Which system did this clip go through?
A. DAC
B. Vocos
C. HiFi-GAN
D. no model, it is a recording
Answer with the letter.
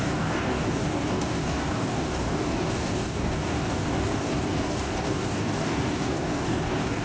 A